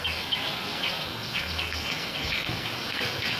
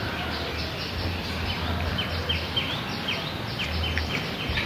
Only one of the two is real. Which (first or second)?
second